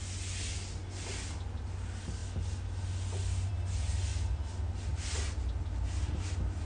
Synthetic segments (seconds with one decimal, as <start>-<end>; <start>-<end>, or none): none